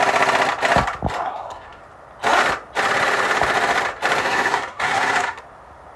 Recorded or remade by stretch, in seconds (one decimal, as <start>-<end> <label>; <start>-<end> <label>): 0.0-1.2 recorded; 1.2-1.8 remade; 1.8-4.2 recorded; 4.2-5.4 remade; 5.4-6.0 recorded